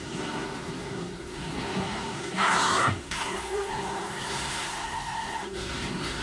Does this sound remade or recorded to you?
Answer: remade